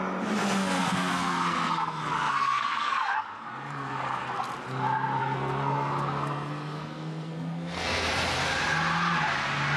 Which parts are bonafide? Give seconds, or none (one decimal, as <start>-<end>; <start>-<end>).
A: 0.0-0.4; 4.4-5.2; 8.1-9.8